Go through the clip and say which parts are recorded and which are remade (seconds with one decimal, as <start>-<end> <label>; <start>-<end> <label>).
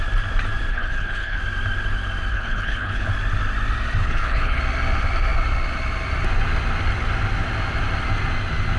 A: 0.0-0.7 recorded; 0.7-1.4 remade; 1.4-2.3 recorded; 2.3-3.1 remade; 3.1-4.0 recorded; 4.0-4.6 remade; 4.6-8.8 recorded